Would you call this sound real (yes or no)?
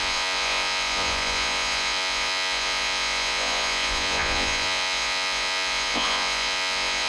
no